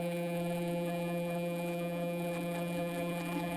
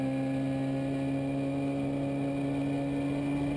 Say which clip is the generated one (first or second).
first